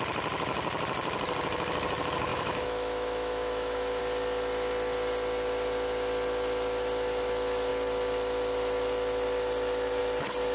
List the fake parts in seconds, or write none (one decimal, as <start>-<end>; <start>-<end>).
2.3-4.0